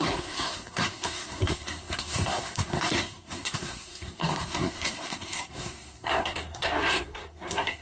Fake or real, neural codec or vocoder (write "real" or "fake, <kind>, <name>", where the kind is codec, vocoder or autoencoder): fake, codec, SNAC